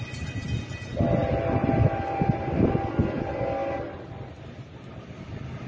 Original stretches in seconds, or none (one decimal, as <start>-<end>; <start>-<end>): 0.0-5.7